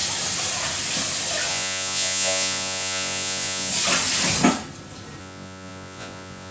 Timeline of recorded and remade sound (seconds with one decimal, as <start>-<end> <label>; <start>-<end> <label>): 0.0-1.5 recorded; 1.5-3.7 remade; 3.7-5.2 recorded; 5.2-6.5 remade